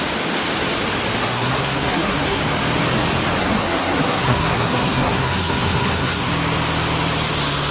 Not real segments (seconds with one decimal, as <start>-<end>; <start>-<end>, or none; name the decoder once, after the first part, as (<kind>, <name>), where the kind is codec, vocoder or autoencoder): 1.2-2.4 (codec, SNAC); 3.4-6.3